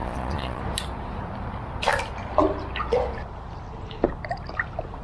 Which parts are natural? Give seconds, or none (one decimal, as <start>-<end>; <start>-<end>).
0.6-5.0